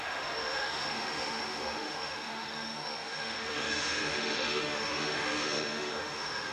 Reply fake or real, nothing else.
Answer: fake